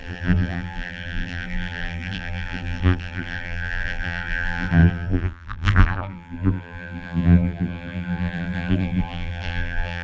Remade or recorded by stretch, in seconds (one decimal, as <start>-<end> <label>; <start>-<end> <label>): 0.0-10.0 remade